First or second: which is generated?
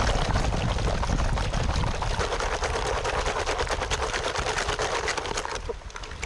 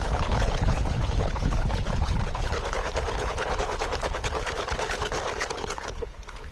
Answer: second